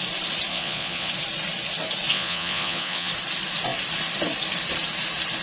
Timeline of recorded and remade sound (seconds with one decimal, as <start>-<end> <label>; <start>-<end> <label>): 0.0-0.5 recorded; 0.5-1.1 remade; 1.1-2.1 recorded; 2.1-3.1 remade; 3.1-5.4 recorded